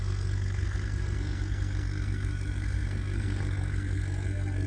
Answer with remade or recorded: remade